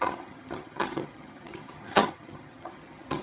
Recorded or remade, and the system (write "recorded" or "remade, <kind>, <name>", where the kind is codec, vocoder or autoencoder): remade, vocoder, HiFi-GAN